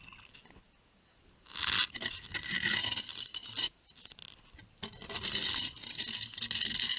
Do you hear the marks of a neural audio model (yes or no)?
no